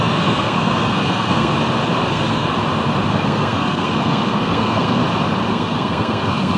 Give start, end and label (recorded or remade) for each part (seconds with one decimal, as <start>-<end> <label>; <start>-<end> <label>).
0.0-1.5 remade; 1.5-2.1 recorded; 2.1-2.5 remade; 2.5-3.1 recorded; 3.1-5.0 remade; 5.0-5.5 recorded; 5.5-6.6 remade